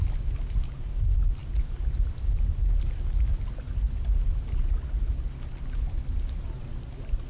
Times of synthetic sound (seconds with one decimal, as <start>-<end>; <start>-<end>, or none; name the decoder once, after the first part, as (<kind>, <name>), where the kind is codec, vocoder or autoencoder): none